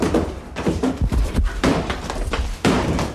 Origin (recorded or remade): remade